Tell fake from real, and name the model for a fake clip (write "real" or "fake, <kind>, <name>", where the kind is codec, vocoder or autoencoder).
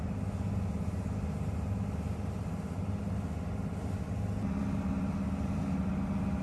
real